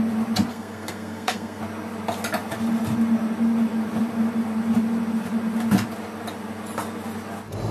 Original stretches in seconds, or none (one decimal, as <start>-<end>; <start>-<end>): 0.0-0.5; 1.6-7.7

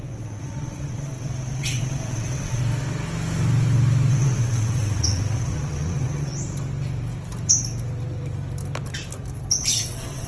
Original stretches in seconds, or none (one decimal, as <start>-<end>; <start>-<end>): 2.6-4.1; 6.3-9.6

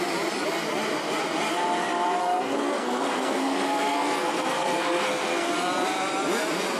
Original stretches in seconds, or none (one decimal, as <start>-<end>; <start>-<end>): 0.0-2.2; 5.5-6.8

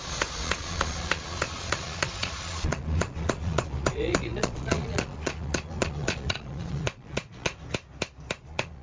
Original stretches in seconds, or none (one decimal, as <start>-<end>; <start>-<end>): 7.5-8.4

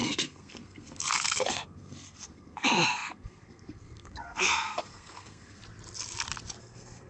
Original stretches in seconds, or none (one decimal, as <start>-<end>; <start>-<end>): 5.6-6.6